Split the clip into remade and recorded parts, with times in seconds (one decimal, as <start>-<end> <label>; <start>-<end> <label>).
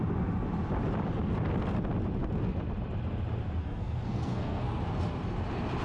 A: 0.0-3.6 recorded; 3.6-4.8 remade; 4.8-5.8 recorded